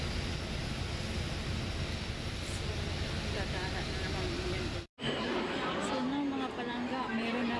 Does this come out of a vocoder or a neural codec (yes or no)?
no